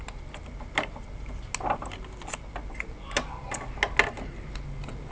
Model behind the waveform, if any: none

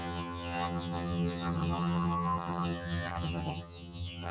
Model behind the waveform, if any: vocoder, HiFi-GAN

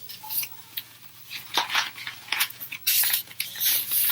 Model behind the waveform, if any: vocoder, Vocos